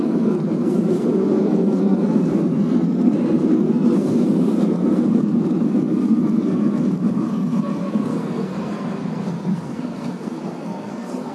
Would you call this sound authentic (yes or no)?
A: no